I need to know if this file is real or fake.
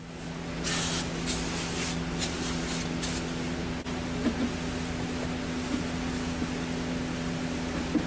real